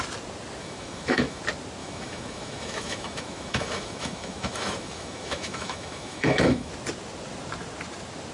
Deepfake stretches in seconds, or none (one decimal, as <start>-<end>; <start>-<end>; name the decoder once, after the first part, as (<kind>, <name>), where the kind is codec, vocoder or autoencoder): 0.6-1.4 (autoencoder, DAC-VAE); 1.8-6.7